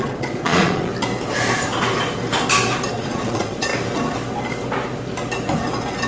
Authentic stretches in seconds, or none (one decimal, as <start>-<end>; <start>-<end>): 0.9-2.9; 3.7-6.1